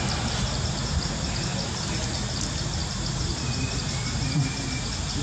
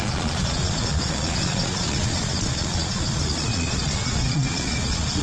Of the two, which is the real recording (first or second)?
first